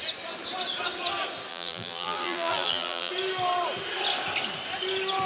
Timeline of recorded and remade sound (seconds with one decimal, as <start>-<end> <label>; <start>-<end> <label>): 0.0-1.5 recorded; 1.5-3.1 remade; 3.1-5.3 recorded